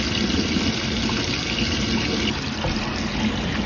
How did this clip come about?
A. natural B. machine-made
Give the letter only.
A